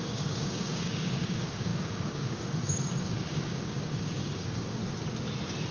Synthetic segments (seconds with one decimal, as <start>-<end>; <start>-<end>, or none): 0.0-4.8